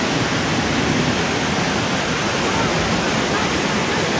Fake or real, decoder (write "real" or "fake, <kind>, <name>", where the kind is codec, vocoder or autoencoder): real